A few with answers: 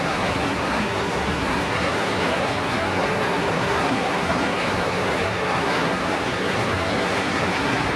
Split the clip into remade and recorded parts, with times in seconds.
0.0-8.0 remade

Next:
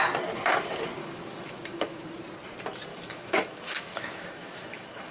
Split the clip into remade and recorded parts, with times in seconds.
0.0-1.0 recorded; 1.0-2.0 remade; 2.0-2.9 recorded; 2.9-5.1 remade

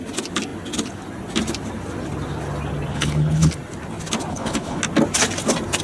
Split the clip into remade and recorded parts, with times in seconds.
0.0-2.9 recorded; 2.9-3.5 remade; 3.5-4.3 recorded; 4.3-4.8 remade; 4.8-5.8 recorded

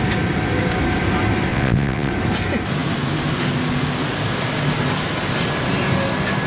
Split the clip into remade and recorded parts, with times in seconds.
0.0-1.5 recorded; 1.5-2.1 remade; 2.1-6.5 recorded

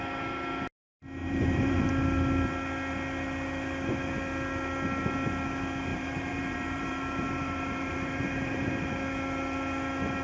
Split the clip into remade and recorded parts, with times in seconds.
0.0-1.2 recorded; 1.2-1.9 remade; 1.9-5.9 recorded; 5.9-8.7 remade; 8.7-10.2 recorded

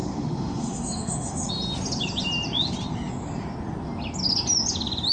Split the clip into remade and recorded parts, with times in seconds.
0.0-1.5 remade; 1.5-5.1 recorded